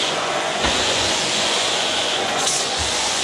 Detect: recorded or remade remade